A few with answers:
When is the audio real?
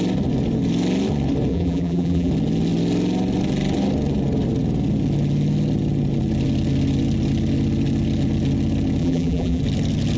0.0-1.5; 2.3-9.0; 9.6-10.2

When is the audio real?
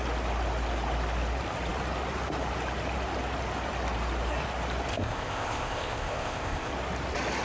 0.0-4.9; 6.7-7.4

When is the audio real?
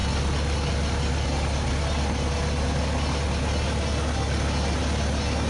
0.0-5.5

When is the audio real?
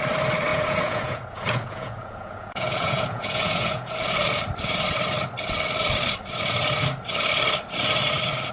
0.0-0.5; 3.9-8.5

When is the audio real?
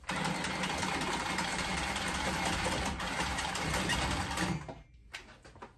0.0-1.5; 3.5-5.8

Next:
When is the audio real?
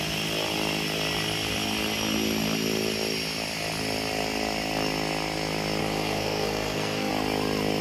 0.0-5.8; 7.1-7.8